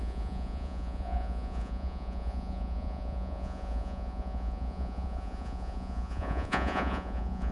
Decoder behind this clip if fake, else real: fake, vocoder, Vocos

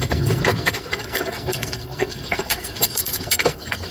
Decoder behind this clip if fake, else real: fake, codec, SNAC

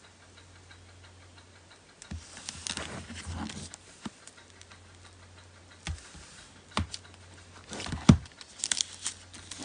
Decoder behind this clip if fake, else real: real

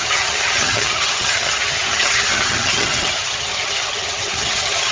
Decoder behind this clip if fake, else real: fake, vocoder, HiFi-GAN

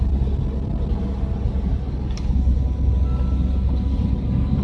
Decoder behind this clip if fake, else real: real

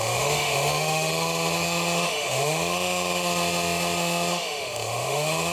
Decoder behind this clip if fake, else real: fake, autoencoder, DAC-VAE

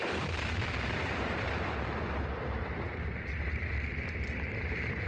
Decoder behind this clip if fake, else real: fake, vocoder, BigVGAN v2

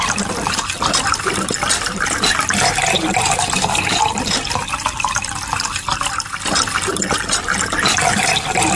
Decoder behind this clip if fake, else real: real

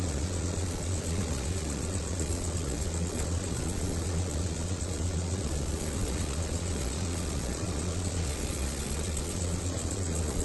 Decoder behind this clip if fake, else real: fake, vocoder, Vocos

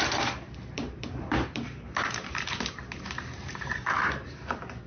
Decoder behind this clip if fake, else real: fake, vocoder, BigVGAN v2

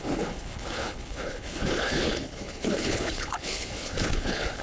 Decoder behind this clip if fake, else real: fake, codec, HILCodec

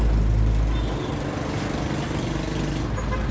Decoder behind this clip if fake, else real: real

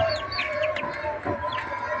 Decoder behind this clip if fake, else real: real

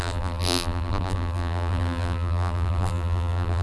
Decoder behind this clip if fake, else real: fake, vocoder, BigVGAN v2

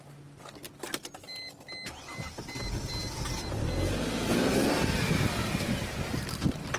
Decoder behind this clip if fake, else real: real